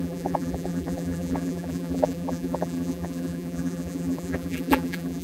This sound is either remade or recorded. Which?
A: remade